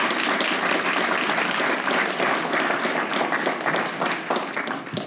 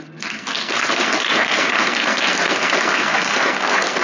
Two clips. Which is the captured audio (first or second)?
first